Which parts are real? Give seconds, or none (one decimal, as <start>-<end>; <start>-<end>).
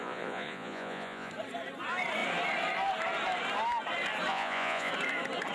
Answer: 1.3-4.3; 4.9-5.5